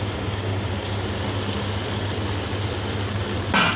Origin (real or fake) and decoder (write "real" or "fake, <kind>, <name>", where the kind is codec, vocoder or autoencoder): real